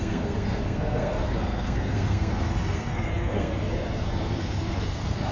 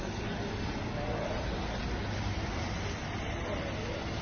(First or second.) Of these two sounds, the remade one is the first